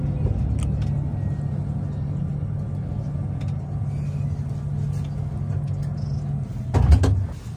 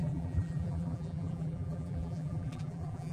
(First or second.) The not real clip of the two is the second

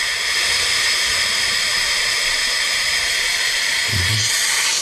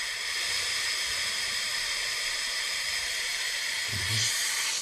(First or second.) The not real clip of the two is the second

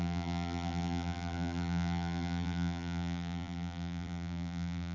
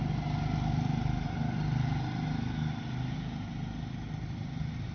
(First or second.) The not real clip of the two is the first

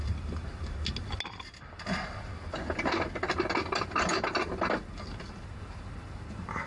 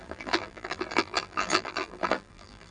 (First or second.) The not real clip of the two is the second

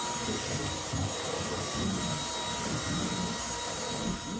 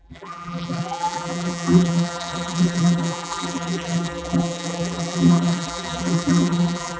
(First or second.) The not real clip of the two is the second